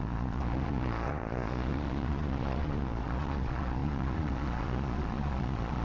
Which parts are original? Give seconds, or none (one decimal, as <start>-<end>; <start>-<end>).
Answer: none